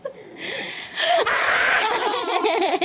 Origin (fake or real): fake